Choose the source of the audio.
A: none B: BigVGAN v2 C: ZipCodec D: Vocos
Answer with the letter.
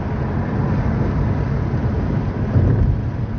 B